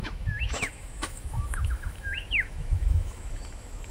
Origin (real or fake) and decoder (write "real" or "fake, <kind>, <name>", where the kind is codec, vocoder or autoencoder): fake, autoencoder, DAC-VAE